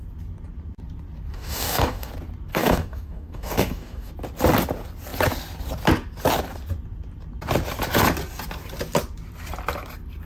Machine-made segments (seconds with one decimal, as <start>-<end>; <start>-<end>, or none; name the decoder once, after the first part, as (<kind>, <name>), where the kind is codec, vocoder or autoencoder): 1.3-2.1 (codec, DAC); 2.5-4.1